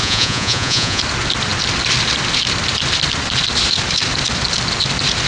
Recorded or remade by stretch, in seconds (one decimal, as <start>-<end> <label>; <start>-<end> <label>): 0.0-1.0 remade; 1.0-5.3 recorded